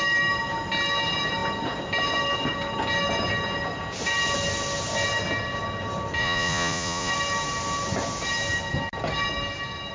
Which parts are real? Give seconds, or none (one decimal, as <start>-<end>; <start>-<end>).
0.0-6.2; 7.1-9.9